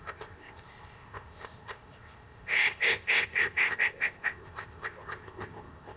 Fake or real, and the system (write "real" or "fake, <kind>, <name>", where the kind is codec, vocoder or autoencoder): fake, codec, ZipCodec